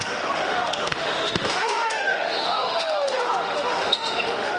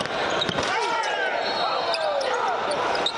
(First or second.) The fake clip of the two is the first